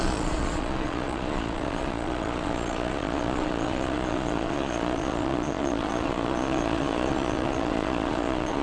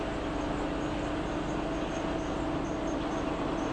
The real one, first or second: second